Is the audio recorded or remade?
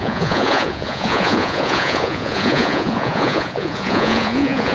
remade